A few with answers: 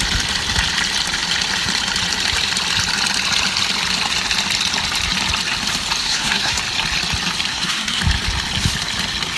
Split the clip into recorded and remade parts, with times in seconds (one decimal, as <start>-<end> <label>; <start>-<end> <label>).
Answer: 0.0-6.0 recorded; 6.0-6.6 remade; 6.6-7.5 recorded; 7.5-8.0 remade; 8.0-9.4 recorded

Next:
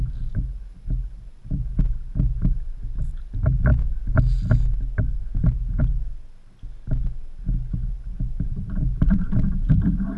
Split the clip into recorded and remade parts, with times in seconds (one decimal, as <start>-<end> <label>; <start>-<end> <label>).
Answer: 0.0-3.7 remade; 3.7-8.2 recorded; 8.2-10.2 remade

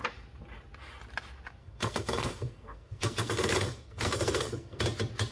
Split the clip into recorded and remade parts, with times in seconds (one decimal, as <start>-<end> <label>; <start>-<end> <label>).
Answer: 0.0-1.6 recorded; 1.6-4.8 remade; 4.8-5.3 recorded